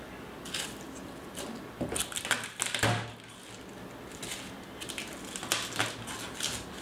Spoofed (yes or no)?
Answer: no